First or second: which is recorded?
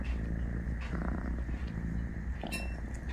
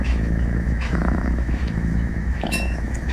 first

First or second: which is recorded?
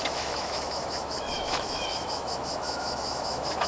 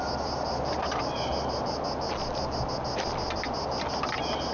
second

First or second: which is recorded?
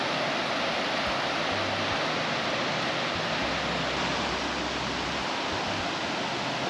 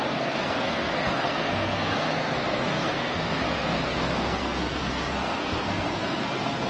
first